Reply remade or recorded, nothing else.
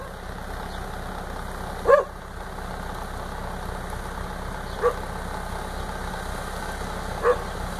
recorded